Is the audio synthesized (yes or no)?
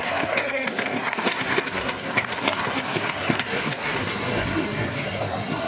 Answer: yes